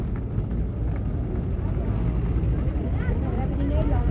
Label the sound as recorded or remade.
recorded